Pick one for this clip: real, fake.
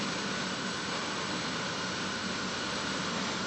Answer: real